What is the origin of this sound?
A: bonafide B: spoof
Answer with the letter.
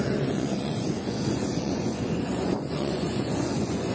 B